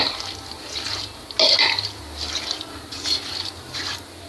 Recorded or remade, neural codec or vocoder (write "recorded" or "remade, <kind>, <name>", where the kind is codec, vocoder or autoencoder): recorded